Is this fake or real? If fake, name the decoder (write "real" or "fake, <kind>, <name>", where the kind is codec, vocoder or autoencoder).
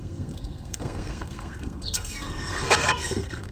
fake, codec, SNAC